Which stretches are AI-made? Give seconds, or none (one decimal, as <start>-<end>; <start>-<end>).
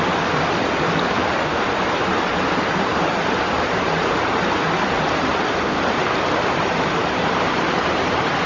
0.0-5.3; 6.3-8.5